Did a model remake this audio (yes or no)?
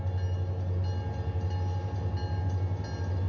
no